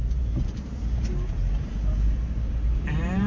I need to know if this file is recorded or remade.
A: remade